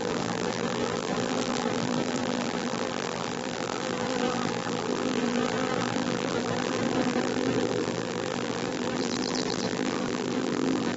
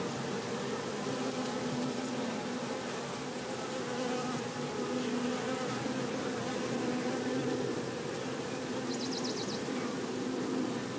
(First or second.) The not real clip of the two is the first